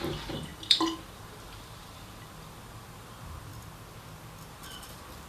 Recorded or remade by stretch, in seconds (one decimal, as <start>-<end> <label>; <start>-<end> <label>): 0.0-3.5 remade; 3.5-4.5 recorded; 4.5-5.3 remade